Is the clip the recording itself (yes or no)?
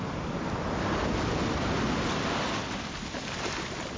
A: yes